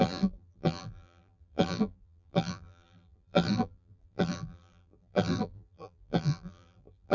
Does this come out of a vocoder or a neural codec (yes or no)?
yes